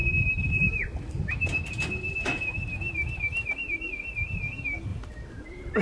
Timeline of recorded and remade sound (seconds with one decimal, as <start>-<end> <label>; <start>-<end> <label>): 0.0-4.9 remade; 4.9-5.8 recorded